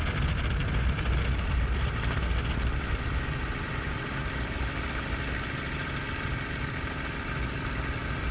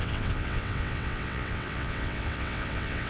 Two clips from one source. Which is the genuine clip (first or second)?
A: first